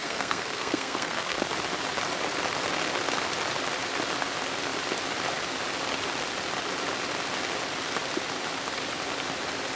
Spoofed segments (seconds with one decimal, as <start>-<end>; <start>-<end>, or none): 0.0-1.5